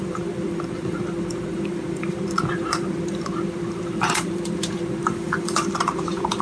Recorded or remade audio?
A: remade